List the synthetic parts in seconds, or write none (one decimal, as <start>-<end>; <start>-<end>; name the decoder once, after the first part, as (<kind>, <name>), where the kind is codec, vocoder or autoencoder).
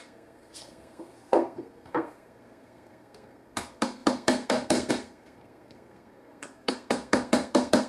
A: 0.0-7.9 (codec, SNAC)